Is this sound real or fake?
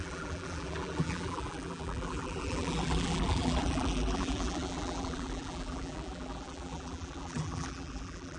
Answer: fake